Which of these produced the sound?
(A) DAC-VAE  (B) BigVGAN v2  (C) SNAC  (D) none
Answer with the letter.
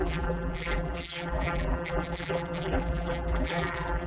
B